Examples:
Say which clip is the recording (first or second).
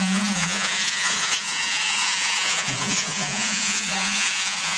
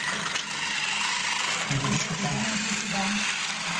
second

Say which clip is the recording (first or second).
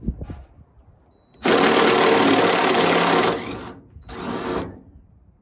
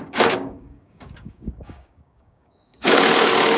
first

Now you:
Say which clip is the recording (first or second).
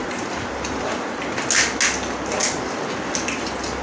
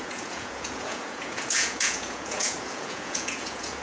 first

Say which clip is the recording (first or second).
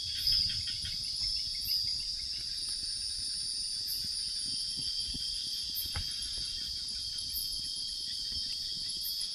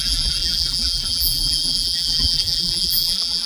first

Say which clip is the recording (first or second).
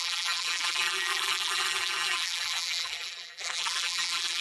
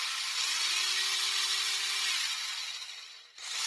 second